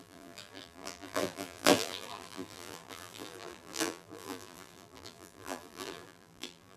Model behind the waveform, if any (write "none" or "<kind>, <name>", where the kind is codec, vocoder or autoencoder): vocoder, BigVGAN v2